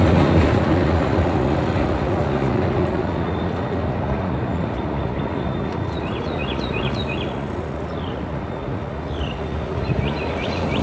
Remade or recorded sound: remade